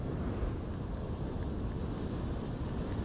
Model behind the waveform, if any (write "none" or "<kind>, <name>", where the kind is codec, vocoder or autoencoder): none